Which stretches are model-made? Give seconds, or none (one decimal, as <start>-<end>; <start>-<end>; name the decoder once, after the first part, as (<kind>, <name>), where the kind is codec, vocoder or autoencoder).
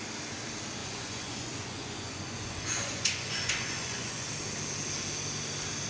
0.8-4.3 (vocoder, Vocos)